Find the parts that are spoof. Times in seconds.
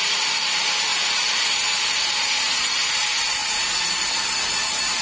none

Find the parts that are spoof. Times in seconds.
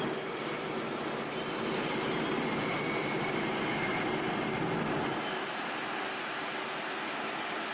3.0-3.5 (vocoder, BigVGAN v2); 3.9-5.6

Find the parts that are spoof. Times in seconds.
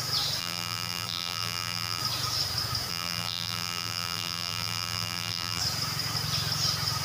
0.4-2.0 (vocoder, BigVGAN v2); 2.9-5.6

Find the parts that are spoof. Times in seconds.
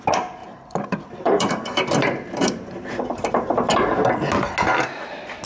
0.4-3.7 (vocoder, BigVGAN v2)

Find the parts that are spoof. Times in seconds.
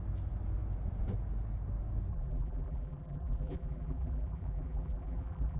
2.1-5.6 (vocoder, BigVGAN v2)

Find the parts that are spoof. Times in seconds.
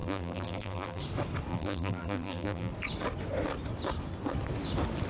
0.0-1.0 (vocoder, BigVGAN v2); 1.5-2.7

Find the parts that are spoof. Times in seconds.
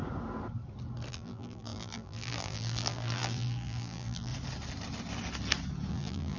1.1-4.3 (vocoder, BigVGAN v2); 5.9-6.4